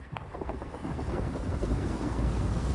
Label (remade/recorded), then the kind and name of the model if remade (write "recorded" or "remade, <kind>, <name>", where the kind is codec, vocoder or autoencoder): remade, codec, SNAC